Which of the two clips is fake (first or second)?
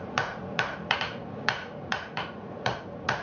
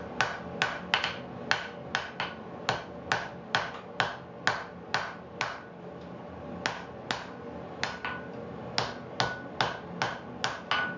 first